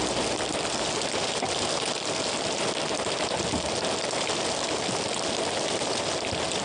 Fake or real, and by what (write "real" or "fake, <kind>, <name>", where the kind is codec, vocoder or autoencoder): real